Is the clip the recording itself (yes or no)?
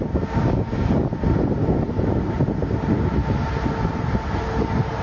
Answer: yes